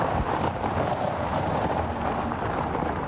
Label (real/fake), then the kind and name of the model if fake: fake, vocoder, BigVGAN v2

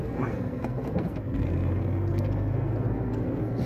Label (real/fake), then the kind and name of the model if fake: fake, codec, SNAC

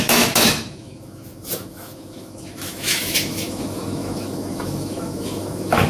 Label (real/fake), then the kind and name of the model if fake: fake, autoencoder, DAC-VAE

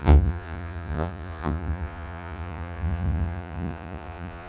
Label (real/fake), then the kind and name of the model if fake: fake, vocoder, Vocos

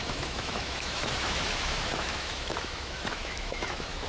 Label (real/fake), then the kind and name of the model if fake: fake, autoencoder, DAC-VAE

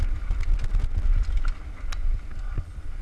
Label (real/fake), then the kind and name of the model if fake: real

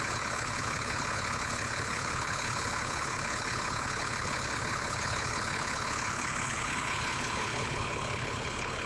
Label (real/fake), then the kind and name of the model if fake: fake, codec, HILCodec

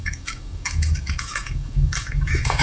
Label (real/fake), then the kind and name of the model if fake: fake, autoencoder, DAC-VAE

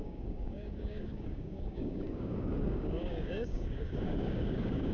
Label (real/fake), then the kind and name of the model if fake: fake, codec, DAC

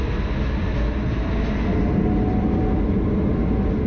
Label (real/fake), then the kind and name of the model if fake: real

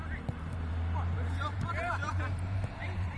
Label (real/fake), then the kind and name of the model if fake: fake, vocoder, BigVGAN v2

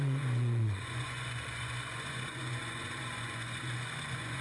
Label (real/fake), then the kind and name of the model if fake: fake, vocoder, Vocos